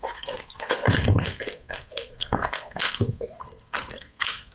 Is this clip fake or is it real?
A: fake